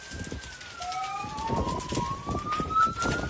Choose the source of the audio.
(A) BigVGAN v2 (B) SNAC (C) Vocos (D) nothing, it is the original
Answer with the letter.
D